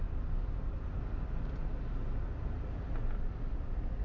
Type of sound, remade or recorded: remade